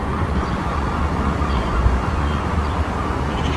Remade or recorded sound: remade